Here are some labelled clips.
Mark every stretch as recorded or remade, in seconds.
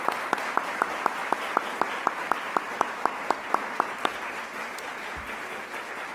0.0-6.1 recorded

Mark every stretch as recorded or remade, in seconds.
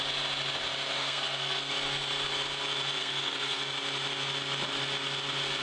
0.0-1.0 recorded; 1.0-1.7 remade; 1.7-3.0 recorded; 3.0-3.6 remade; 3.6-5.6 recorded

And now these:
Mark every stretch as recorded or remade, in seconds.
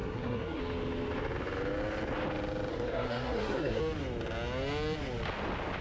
0.0-0.6 remade; 0.6-2.7 recorded; 2.7-3.8 remade; 3.8-5.8 recorded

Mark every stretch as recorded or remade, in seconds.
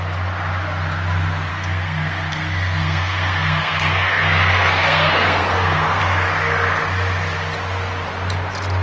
0.0-1.5 recorded; 1.5-6.0 remade; 6.0-8.8 recorded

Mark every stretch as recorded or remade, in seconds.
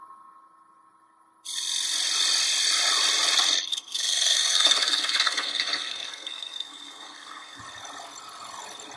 0.0-3.7 recorded; 3.7-7.6 remade; 7.6-9.0 recorded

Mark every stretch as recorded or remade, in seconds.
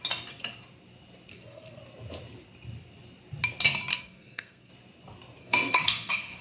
0.0-1.3 recorded; 1.3-1.8 remade; 1.8-3.9 recorded; 3.9-4.7 remade; 4.7-5.4 recorded; 5.4-6.4 remade